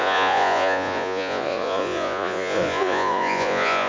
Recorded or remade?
remade